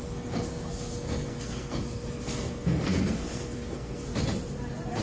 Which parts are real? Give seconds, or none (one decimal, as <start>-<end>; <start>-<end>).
4.1-5.0